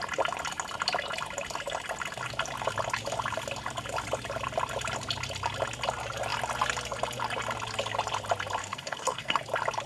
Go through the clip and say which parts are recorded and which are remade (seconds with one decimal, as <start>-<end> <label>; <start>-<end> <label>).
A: 0.0-8.6 recorded; 8.6-9.4 remade; 9.4-9.9 recorded